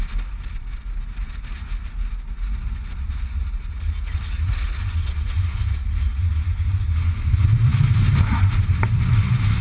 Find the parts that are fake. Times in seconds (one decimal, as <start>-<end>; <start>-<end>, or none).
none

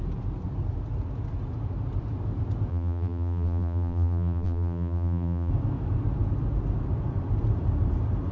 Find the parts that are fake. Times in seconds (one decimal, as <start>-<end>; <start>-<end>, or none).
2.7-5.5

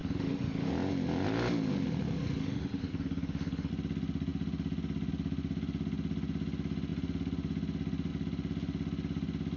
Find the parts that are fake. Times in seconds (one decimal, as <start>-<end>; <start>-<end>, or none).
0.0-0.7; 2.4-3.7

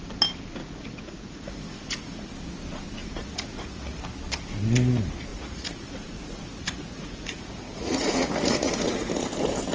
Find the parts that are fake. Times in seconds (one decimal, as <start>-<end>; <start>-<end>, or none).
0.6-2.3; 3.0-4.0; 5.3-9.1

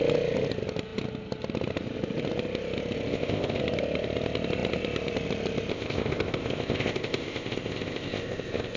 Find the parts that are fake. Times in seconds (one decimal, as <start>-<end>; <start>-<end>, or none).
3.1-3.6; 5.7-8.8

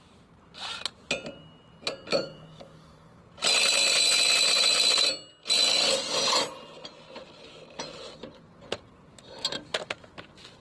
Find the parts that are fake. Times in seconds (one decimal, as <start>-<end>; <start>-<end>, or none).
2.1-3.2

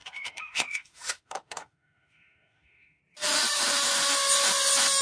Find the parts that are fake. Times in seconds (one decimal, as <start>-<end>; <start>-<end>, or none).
0.0-3.0

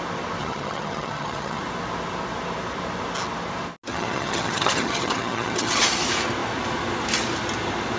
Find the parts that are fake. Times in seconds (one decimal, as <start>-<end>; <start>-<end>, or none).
0.4-1.6; 3.9-5.8